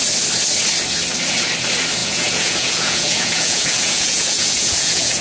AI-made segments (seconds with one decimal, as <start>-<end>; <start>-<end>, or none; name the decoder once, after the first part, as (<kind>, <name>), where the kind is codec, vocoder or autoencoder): 2.0-5.2 (vocoder, Vocos)

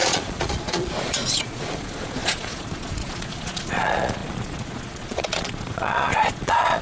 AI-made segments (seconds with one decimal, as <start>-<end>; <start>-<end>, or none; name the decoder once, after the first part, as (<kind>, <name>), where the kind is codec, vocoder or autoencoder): 0.0-6.8 (vocoder, Vocos)

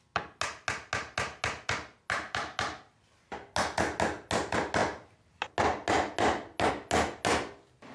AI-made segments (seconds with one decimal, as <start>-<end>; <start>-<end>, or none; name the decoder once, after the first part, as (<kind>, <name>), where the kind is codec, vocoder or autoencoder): none

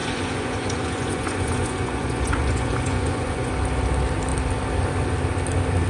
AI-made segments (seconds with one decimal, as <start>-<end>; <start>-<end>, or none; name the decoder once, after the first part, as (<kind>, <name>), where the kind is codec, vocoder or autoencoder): 0.0-3.5 (vocoder, Vocos)

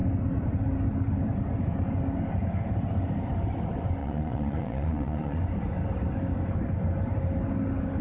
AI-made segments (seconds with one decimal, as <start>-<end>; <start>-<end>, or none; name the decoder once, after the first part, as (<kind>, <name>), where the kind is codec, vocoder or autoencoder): 4.0-5.4 (vocoder, Vocos)